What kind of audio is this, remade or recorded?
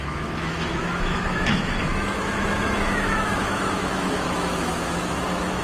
remade